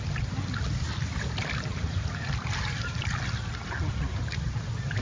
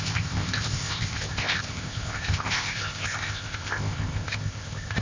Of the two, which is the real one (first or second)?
first